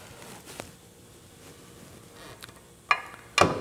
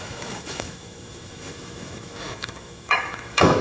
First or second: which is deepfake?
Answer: second